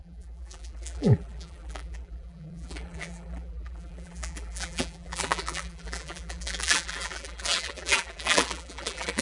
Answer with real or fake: fake